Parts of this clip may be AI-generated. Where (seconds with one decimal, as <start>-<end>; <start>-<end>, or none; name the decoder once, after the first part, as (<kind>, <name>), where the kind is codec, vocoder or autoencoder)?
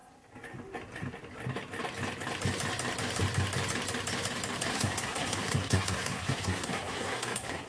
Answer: 4.7-7.7 (codec, SNAC)